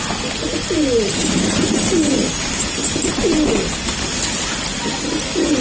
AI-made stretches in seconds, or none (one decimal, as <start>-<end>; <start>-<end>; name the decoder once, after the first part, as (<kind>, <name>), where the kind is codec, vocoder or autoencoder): none